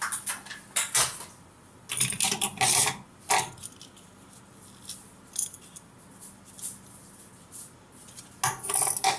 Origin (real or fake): real